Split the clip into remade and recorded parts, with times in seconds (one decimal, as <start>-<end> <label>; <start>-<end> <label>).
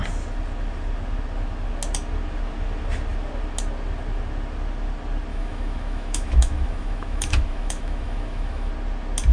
0.0-5.3 recorded; 5.3-8.7 remade; 8.7-9.3 recorded